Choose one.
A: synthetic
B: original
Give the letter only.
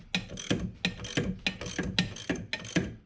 B